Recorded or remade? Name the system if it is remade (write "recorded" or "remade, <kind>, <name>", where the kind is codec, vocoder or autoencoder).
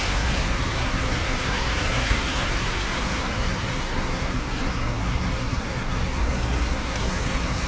remade, codec, SNAC